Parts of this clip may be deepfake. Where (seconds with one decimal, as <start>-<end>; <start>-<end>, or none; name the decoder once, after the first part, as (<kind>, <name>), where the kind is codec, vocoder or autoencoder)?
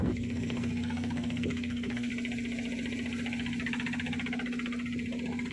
0.0-2.1 (codec, SNAC)